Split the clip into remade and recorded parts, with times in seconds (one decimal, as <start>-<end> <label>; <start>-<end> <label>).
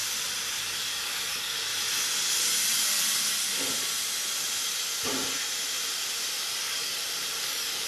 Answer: 0.0-0.5 recorded; 0.5-1.7 remade; 1.7-6.4 recorded; 6.4-6.9 remade; 6.9-7.4 recorded; 7.4-7.9 remade